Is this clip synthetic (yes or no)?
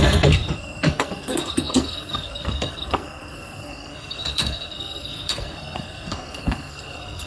yes